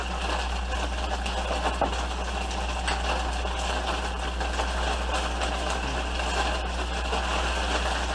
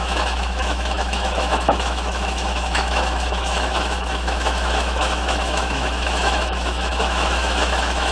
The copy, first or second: second